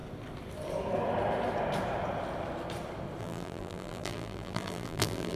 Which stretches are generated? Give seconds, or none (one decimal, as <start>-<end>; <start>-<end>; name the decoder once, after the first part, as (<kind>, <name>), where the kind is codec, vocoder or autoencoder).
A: 3.2-5.4 (vocoder, BigVGAN v2)